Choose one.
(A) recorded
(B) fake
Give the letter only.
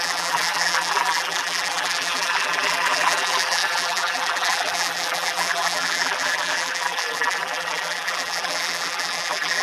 B